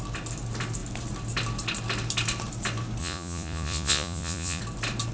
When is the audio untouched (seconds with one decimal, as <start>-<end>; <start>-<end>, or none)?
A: 0.0-3.0; 4.6-5.1